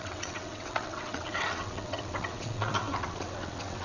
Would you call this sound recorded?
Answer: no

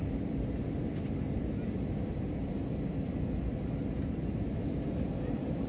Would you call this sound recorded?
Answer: yes